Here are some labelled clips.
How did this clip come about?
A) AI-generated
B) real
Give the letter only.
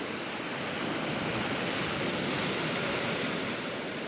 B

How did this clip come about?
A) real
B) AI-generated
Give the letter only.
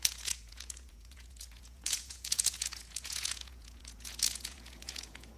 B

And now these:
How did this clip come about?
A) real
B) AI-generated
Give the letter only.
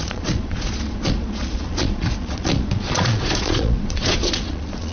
B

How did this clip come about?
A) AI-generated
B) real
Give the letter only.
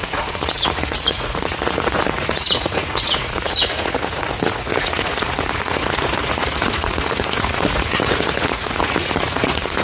A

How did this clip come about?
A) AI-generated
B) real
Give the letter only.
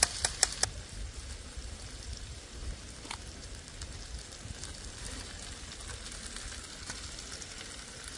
B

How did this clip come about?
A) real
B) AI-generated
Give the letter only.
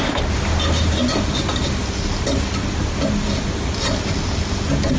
A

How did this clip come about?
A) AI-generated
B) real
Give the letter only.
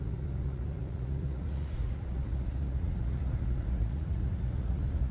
A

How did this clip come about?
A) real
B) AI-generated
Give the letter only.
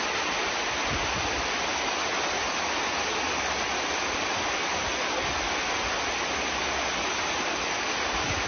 A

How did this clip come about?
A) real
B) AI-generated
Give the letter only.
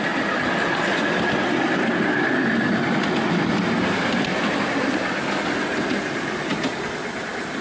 A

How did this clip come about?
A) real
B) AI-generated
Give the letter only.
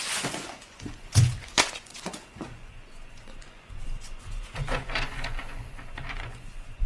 B